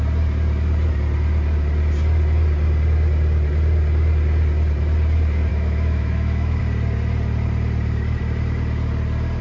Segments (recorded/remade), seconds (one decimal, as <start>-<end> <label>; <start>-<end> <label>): 0.0-5.5 recorded; 5.5-6.6 remade; 6.6-9.4 recorded